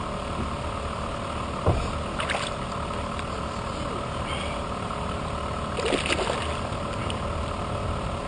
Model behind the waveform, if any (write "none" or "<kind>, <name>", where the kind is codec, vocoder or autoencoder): none